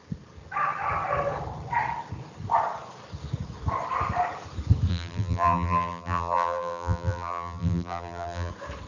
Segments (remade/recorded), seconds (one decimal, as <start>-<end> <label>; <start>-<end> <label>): 0.0-4.9 recorded; 4.9-8.5 remade; 8.5-8.9 recorded